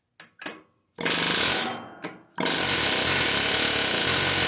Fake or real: real